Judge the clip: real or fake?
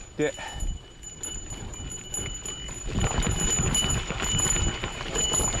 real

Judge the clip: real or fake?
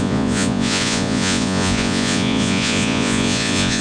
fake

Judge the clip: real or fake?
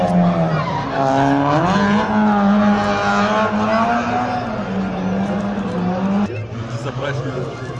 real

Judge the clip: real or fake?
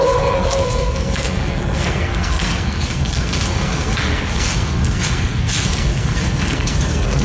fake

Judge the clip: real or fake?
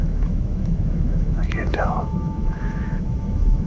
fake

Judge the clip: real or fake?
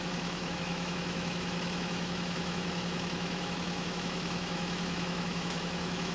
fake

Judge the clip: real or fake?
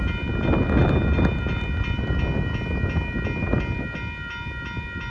real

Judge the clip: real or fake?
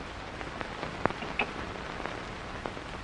real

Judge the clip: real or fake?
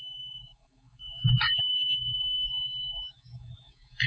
fake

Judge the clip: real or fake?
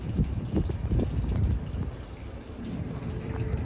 real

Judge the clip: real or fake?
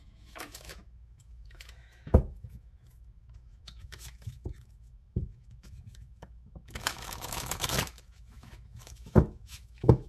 fake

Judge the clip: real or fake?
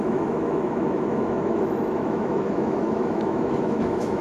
fake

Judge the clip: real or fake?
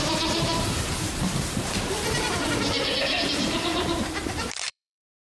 fake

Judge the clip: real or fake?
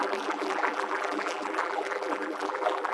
fake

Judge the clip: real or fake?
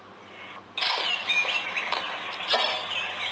real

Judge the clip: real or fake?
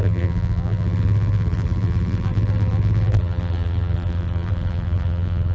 fake